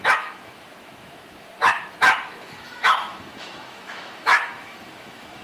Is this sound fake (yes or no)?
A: yes